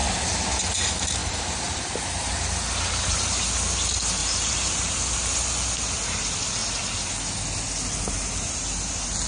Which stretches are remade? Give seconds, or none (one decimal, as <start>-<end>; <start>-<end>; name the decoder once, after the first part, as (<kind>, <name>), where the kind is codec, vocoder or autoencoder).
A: 1.2-1.9 (vocoder, BigVGAN v2); 4.2-5.0